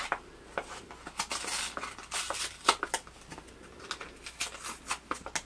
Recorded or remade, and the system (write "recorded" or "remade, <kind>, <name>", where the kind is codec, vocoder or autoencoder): recorded